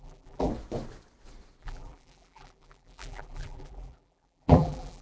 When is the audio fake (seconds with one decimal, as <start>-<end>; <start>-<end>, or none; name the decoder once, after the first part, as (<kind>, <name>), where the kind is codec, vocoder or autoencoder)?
0.0-0.5 (vocoder, BigVGAN v2); 1.6-5.0